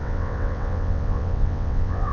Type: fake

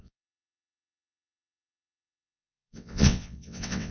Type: fake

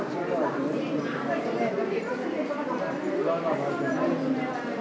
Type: real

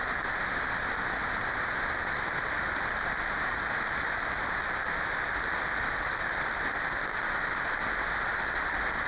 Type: real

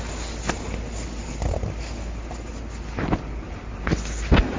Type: real